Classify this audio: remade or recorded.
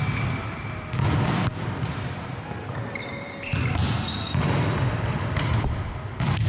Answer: recorded